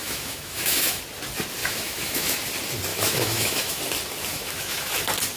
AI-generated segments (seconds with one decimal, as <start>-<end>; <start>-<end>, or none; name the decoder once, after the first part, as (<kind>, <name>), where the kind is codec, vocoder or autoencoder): 0.0-1.0 (autoencoder, DAC-VAE); 1.6-2.4; 2.9-3.8; 4.3-4.9

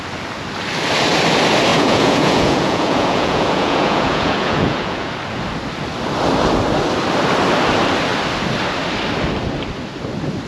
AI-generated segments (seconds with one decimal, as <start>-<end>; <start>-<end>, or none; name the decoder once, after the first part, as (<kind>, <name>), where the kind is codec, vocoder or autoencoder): 1.7-5.1 (vocoder, Vocos)

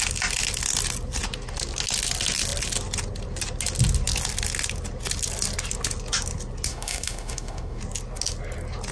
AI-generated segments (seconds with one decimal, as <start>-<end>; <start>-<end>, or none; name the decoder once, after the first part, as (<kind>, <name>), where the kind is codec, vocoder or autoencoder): 6.7-7.8 (autoencoder, DAC-VAE)

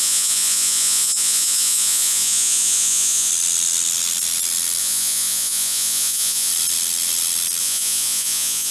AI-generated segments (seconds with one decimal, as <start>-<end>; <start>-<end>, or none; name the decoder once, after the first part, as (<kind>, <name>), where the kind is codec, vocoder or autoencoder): 0.0-3.3 (vocoder, Vocos); 4.8-6.5; 7.6-8.7